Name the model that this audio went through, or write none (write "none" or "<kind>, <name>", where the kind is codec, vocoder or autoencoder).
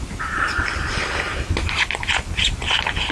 none